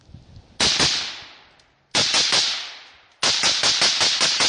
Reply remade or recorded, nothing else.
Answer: recorded